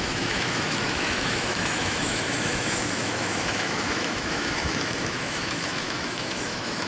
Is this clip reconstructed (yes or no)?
yes